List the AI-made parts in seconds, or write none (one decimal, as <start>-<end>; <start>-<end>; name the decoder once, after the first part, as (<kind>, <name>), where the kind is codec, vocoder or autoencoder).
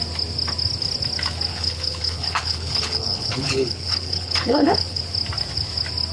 1.5-5.0 (codec, HILCodec)